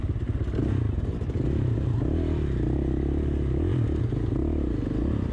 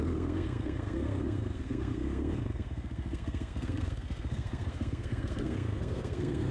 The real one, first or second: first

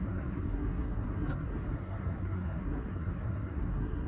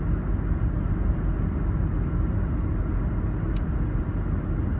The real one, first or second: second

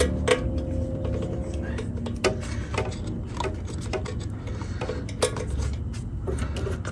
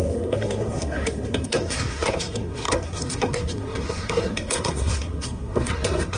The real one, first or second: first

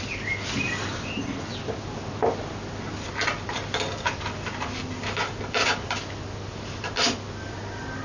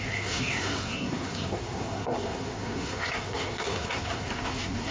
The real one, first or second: first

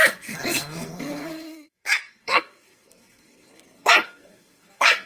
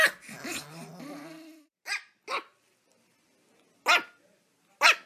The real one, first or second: second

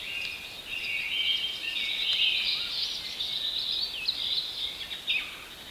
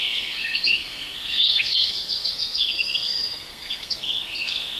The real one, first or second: first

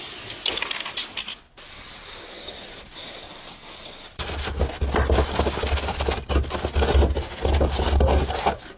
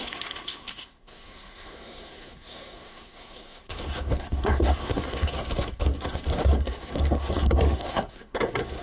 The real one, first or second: first